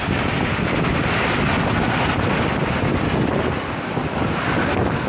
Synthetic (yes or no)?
no